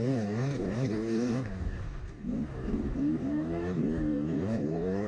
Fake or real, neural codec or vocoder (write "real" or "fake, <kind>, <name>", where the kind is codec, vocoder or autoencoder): fake, codec, DAC